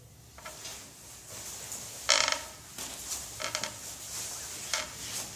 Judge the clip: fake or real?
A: real